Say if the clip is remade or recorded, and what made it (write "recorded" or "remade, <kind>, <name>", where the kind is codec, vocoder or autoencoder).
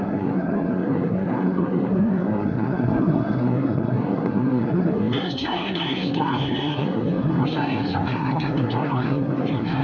remade, codec, SNAC